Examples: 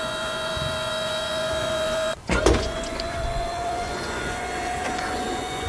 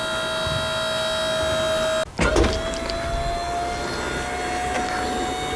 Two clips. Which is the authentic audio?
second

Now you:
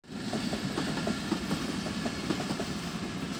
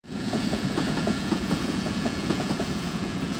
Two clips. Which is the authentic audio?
first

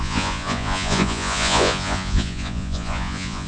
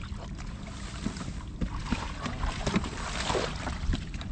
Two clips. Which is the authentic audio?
second